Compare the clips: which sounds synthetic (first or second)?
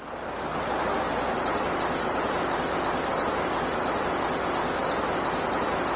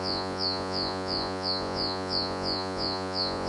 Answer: second